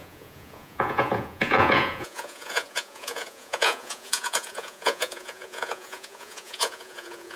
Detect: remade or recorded remade